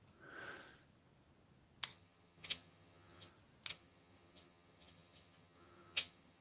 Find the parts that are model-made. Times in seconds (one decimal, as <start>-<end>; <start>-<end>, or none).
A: 1.9-3.3; 3.7-6.4